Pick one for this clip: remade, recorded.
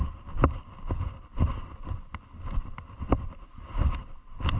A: recorded